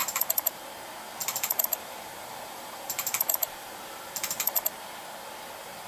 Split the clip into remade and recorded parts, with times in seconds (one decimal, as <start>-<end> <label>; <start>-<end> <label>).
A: 0.0-0.6 remade; 0.6-1.2 recorded; 1.2-4.7 remade; 4.7-5.9 recorded